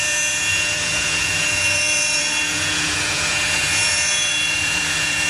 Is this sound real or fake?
fake